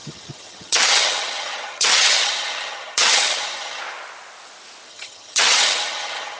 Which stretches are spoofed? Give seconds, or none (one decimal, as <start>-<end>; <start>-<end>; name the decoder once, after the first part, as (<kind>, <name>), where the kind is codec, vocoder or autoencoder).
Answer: 0.0-3.8 (vocoder, HiFi-GAN); 4.9-6.4